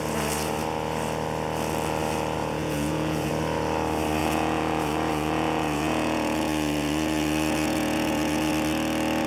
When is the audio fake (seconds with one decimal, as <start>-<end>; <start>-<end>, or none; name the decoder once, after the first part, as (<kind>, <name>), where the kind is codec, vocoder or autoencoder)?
2.4-3.3 (vocoder, Vocos); 4.2-8.5